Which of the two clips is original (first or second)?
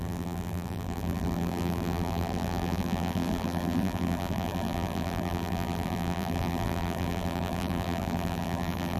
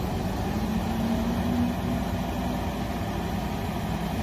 second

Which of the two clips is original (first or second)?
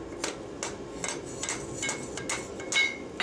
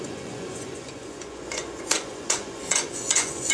first